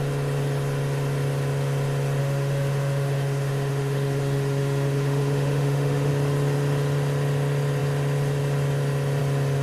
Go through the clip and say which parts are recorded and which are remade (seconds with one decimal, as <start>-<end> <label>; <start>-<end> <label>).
0.0-2.2 recorded; 2.2-6.1 remade; 6.1-9.6 recorded

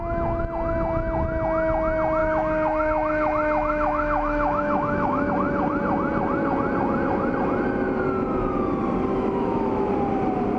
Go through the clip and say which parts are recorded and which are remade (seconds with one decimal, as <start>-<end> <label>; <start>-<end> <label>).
0.0-2.2 recorded; 2.2-5.3 remade; 5.3-9.1 recorded; 9.1-9.9 remade; 9.9-10.6 recorded

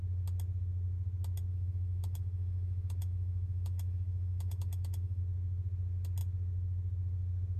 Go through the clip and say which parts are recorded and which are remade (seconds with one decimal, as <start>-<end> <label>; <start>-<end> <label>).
0.0-1.5 recorded; 1.5-5.2 remade; 5.2-7.6 recorded